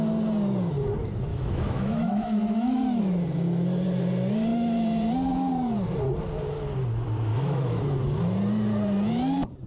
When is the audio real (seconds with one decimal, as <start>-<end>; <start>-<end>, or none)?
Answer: 0.0-1.3; 3.0-7.3; 8.0-9.7